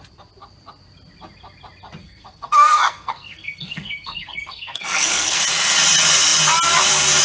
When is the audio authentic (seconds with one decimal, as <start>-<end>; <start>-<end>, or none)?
0.0-2.0; 5.4-7.2